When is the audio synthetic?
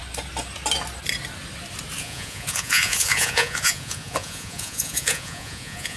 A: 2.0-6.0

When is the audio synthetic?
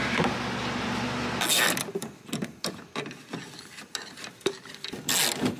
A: none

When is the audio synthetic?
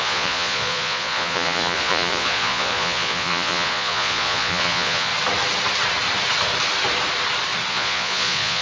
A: 0.0-5.1; 7.7-8.6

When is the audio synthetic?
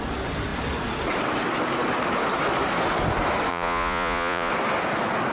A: 3.5-4.5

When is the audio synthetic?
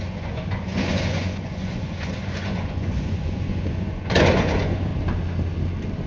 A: 0.0-4.9